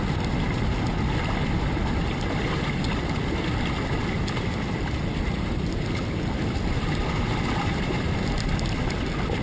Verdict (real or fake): real